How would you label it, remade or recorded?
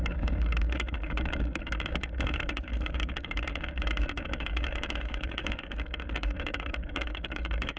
remade